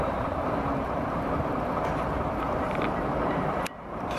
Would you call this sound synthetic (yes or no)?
yes